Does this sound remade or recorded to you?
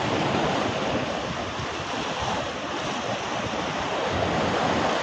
remade